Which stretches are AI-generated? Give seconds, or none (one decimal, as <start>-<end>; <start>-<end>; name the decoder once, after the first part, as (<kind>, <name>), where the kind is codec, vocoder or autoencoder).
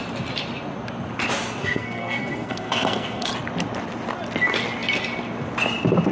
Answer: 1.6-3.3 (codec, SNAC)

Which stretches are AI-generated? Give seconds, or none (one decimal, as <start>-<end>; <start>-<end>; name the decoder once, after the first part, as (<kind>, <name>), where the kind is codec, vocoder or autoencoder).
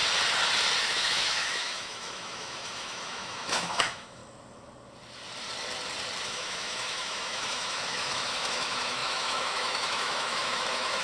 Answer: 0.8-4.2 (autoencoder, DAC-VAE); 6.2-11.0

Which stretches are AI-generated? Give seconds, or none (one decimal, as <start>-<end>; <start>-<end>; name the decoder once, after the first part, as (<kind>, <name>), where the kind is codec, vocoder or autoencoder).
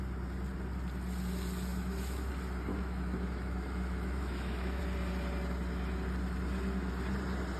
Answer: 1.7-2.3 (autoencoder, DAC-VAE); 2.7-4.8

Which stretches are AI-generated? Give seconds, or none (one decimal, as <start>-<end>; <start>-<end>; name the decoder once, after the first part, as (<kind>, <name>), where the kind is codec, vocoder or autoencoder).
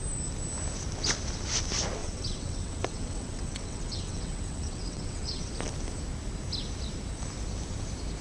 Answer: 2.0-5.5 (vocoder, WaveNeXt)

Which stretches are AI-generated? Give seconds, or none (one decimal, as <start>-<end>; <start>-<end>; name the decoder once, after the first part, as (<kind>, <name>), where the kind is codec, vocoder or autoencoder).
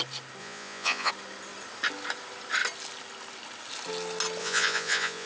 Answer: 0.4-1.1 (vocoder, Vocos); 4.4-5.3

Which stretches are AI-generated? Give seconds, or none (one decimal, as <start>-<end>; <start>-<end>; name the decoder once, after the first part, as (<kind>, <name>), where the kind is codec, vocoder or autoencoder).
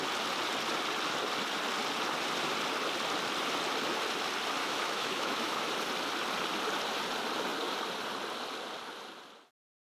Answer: 4.6-5.7 (autoencoder, DAC-VAE)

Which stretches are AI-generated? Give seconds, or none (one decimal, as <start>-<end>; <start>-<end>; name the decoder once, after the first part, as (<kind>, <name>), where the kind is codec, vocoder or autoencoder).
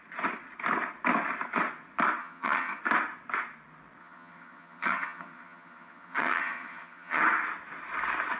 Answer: 2.2-2.8 (vocoder, HiFi-GAN); 4.0-7.2